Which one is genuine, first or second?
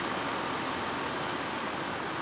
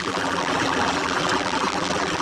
first